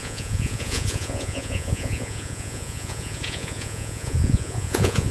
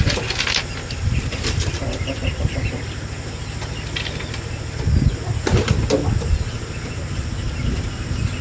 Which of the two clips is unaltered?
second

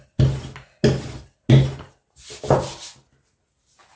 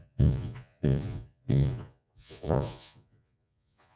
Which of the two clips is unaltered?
first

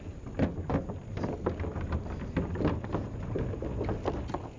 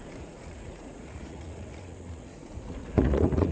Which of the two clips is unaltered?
first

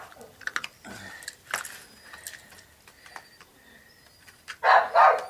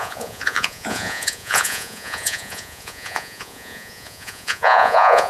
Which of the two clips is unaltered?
first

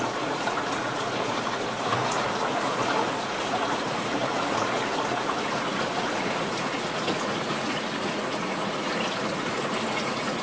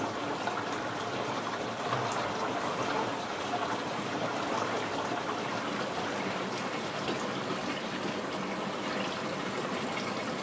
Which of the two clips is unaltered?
second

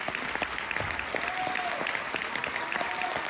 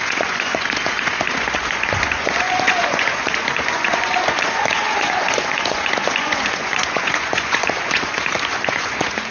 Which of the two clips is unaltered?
first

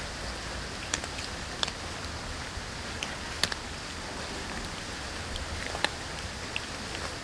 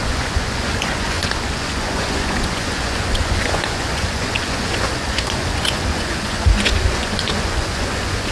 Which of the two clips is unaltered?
first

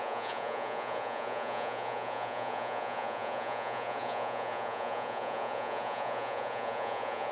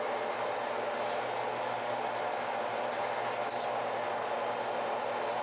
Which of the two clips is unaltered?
second